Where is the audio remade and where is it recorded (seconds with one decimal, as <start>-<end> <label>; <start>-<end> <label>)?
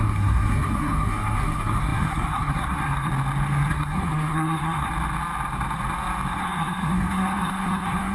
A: 0.0-3.1 remade; 3.1-3.7 recorded; 3.7-4.9 remade; 4.9-6.3 recorded; 6.3-8.1 remade